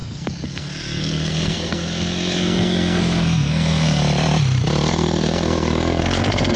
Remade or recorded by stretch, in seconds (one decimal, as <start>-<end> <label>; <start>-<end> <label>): 0.0-4.0 remade; 4.0-4.9 recorded; 4.9-6.6 remade